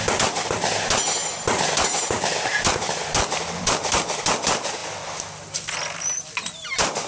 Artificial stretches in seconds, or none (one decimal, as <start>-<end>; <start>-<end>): none